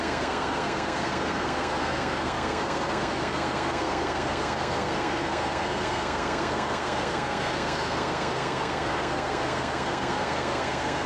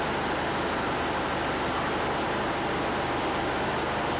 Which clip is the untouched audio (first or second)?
second